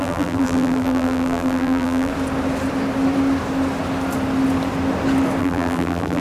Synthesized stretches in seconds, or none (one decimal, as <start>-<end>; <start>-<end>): 0.0-2.1; 5.4-6.2